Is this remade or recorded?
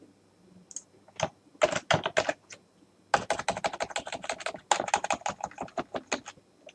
recorded